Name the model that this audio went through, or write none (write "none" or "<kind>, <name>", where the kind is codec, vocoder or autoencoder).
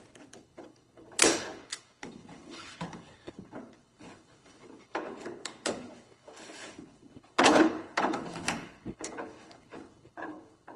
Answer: codec, HILCodec